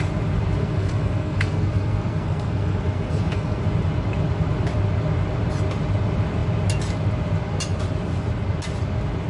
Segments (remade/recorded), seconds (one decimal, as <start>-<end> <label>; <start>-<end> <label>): 0.0-0.6 recorded; 0.6-3.6 remade; 3.6-9.3 recorded

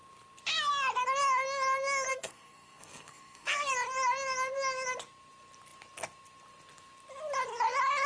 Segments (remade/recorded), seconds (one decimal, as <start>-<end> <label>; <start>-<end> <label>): 0.0-2.1 recorded; 2.1-3.7 remade; 3.7-8.1 recorded

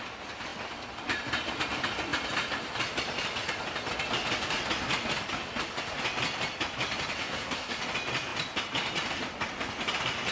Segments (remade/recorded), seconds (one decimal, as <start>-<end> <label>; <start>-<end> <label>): 0.0-7.2 recorded; 7.2-7.8 remade; 7.8-10.3 recorded